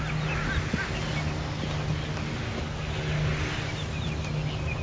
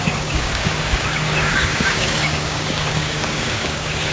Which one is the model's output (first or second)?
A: second